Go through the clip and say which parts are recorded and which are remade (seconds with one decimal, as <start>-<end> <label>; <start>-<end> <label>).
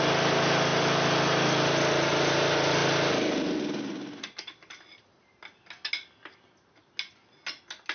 0.0-7.9 recorded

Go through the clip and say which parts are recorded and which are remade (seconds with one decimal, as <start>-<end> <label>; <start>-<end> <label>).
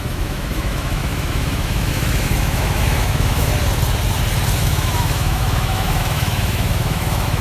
0.0-3.5 remade; 3.5-4.6 recorded; 4.6-7.4 remade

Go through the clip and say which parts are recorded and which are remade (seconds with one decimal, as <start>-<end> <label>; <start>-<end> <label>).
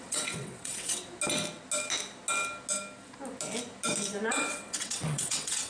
0.0-1.0 remade; 1.0-4.3 recorded; 4.3-5.7 remade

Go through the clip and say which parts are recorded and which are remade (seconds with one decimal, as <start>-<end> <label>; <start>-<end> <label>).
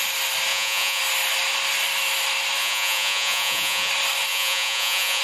0.0-0.5 recorded; 0.5-1.0 remade; 1.0-2.6 recorded; 2.6-3.9 remade; 3.9-4.3 recorded; 4.3-5.2 remade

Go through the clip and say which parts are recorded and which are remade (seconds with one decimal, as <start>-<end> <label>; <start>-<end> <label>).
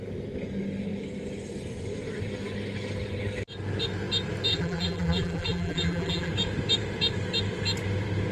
0.0-4.5 recorded; 4.5-6.3 remade; 6.3-8.3 recorded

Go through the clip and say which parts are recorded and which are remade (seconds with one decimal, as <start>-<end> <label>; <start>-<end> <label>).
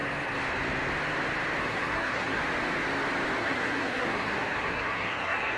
0.0-1.6 recorded; 1.6-2.4 remade; 2.4-3.4 recorded; 3.4-5.6 remade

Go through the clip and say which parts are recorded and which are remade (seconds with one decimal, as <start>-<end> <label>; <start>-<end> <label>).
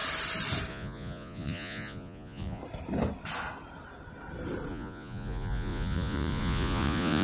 0.0-0.7 recorded; 0.7-2.6 remade; 2.6-4.7 recorded; 4.7-7.2 remade